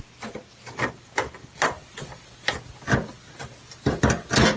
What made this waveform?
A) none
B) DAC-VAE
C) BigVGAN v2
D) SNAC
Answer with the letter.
A